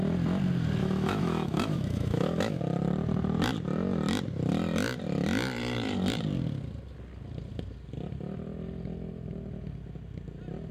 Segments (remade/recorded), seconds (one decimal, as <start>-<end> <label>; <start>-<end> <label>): 0.0-0.8 recorded; 0.8-2.6 remade; 2.6-10.7 recorded